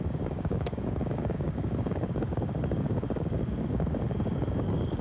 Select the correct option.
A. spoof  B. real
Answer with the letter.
A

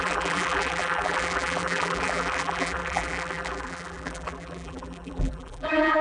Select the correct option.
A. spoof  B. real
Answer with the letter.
A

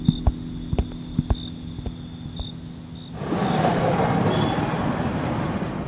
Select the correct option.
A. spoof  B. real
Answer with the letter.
B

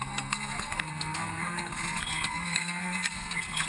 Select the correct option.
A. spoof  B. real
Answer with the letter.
A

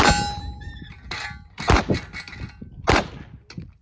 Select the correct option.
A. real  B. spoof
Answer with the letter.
A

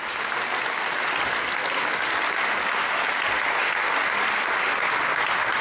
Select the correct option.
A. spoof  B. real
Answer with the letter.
B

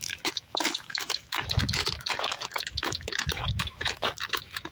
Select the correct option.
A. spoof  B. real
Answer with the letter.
A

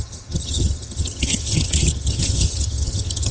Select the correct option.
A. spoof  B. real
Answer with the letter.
A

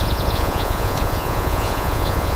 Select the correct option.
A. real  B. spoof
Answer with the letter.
B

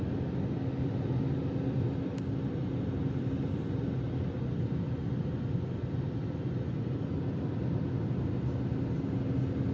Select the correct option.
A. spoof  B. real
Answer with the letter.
B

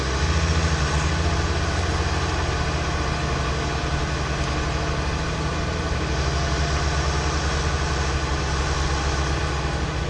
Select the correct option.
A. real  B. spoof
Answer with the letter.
A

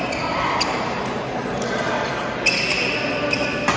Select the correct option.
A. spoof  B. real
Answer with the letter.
B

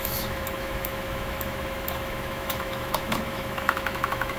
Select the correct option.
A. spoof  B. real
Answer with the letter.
A